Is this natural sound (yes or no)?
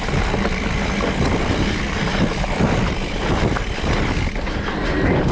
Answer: yes